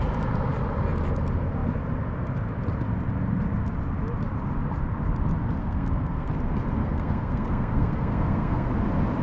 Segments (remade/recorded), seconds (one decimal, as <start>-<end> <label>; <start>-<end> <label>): 0.0-5.6 recorded; 5.6-6.3 remade; 6.3-6.8 recorded; 6.8-8.7 remade; 8.7-9.2 recorded